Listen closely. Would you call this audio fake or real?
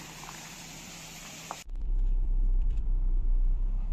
fake